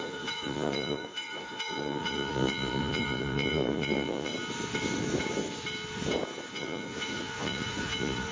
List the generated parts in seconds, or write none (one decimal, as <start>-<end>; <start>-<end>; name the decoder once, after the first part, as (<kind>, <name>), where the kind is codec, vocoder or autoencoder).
0.0-4.3 (vocoder, Vocos); 6.5-8.3